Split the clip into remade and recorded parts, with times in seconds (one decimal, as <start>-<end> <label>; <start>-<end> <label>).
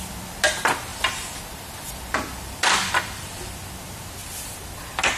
0.0-0.9 recorded; 0.9-3.7 remade; 3.7-4.2 recorded; 4.2-5.2 remade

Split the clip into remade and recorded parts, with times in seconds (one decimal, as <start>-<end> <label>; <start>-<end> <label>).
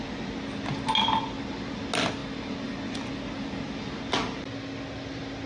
0.0-5.5 recorded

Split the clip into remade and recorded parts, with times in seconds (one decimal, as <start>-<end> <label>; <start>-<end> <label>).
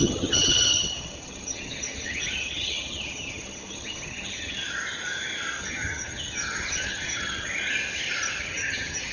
0.0-4.6 remade; 4.6-5.6 recorded; 5.6-7.5 remade; 7.5-8.4 recorded; 8.4-9.1 remade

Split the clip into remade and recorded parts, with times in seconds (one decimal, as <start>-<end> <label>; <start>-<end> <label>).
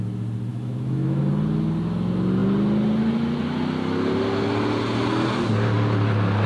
0.0-0.5 recorded; 0.5-1.2 remade; 1.2-6.5 recorded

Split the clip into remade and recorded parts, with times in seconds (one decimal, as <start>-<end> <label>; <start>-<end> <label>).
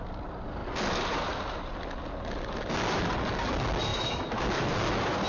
0.0-3.9 recorded; 3.9-4.4 remade; 4.4-5.3 recorded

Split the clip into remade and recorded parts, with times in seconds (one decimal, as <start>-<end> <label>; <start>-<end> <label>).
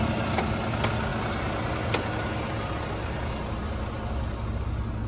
0.0-5.1 recorded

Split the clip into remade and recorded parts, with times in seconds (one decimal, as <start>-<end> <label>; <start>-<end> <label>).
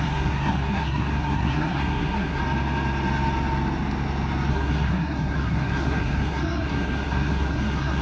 0.0-2.4 remade; 2.4-4.5 recorded; 4.5-8.0 remade